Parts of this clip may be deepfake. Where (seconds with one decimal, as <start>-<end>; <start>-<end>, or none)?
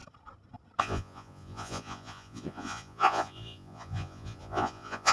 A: 0.8-5.1